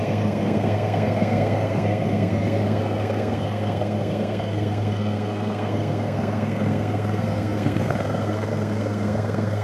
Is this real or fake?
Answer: fake